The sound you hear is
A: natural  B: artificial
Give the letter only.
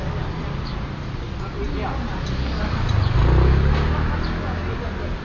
A